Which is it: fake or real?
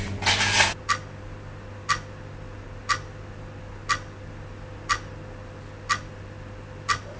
real